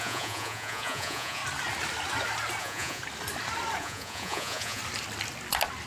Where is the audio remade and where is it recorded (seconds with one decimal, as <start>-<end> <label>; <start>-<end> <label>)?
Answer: 0.0-1.4 remade; 1.4-2.6 recorded; 2.6-3.0 remade; 3.0-3.8 recorded; 3.8-4.8 remade; 4.8-5.9 recorded

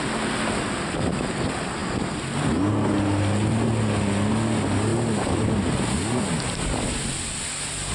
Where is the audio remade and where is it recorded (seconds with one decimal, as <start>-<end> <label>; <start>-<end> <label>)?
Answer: 0.0-7.9 recorded

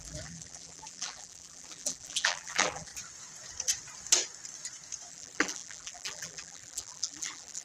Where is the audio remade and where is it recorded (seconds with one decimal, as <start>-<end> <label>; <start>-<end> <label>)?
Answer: 0.0-2.9 remade; 2.9-5.1 recorded; 5.1-7.6 remade

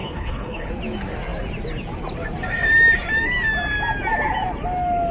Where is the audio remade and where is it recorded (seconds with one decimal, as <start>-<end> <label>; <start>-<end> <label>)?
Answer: 0.0-0.7 remade; 0.7-5.1 recorded

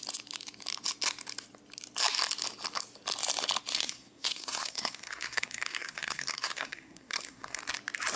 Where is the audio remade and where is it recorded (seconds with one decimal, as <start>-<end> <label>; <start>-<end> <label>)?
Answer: 0.0-3.7 recorded; 3.7-7.6 remade; 7.6-8.2 recorded